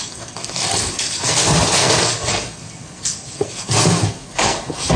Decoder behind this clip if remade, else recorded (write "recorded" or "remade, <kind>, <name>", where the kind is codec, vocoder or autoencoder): remade, codec, SNAC